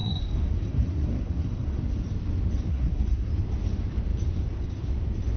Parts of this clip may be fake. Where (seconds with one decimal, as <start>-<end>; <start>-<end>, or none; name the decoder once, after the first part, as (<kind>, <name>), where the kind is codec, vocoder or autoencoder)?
0.0-1.8 (codec, SNAC); 2.7-3.3

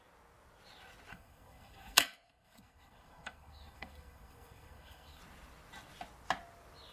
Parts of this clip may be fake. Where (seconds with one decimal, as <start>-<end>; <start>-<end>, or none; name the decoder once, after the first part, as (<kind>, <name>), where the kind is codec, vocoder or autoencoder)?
1.1-5.2 (codec, SNAC)

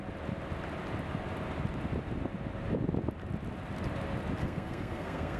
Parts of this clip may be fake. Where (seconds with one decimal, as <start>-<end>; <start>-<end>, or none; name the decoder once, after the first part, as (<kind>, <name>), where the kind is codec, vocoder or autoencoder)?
4.4-5.4 (codec, SNAC)

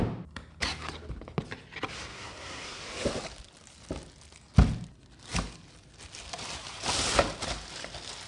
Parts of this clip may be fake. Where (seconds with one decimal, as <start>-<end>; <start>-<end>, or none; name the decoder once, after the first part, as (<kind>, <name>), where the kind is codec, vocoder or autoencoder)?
2.1-2.8 (codec, SNAC)